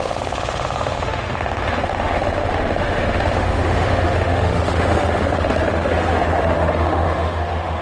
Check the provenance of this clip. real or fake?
fake